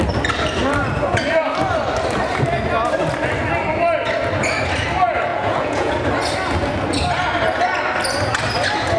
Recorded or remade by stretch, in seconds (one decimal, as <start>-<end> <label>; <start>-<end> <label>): 0.0-5.3 recorded; 5.3-5.9 remade; 5.9-9.0 recorded